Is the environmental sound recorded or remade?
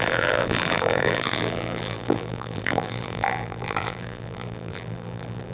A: remade